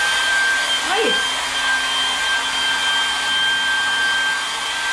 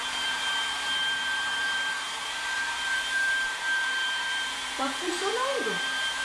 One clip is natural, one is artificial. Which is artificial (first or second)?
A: second